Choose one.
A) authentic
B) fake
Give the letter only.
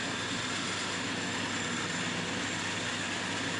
A